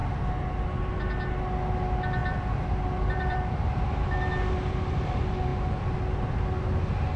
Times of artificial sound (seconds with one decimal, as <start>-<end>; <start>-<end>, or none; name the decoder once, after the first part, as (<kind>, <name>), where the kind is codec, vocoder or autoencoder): 2.2-4.1 (vocoder, BigVGAN v2)